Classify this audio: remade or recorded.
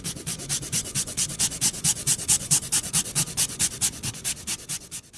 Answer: remade